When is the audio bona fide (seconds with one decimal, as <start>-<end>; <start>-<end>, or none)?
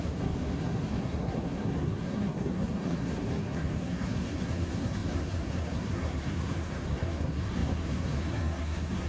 none